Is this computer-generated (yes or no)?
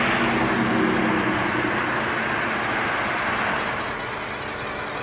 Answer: no